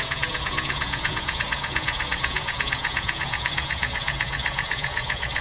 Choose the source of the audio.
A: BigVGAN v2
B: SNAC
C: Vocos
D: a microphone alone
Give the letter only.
C